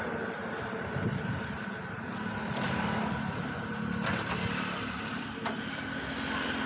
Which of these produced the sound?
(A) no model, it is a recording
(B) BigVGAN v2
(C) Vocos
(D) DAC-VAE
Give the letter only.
A